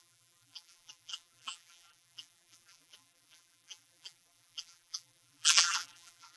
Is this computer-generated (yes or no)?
yes